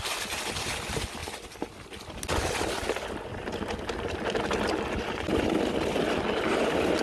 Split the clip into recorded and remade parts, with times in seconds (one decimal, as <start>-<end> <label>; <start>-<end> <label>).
0.0-7.0 recorded